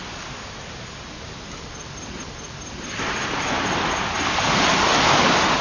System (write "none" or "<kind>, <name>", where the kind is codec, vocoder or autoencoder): none